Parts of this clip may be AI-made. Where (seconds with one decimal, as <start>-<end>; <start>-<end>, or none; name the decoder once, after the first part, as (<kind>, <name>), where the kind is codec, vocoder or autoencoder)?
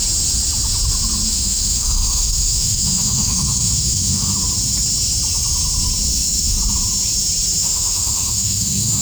1.3-4.3 (autoencoder, DAC-VAE); 6.1-6.6; 7.6-9.0